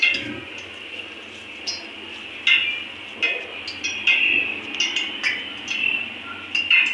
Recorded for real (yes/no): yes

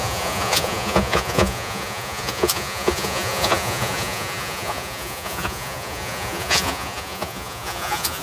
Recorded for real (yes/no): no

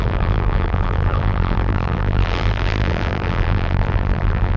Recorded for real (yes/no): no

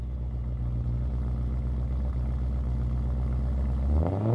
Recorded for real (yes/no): yes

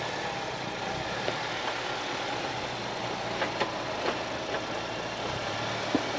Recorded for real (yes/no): yes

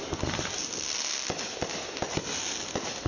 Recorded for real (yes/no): yes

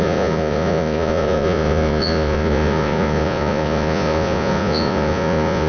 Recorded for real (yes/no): no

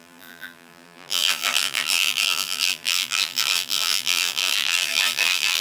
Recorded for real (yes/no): no